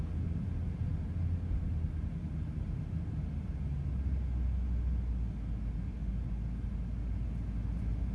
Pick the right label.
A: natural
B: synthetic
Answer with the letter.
A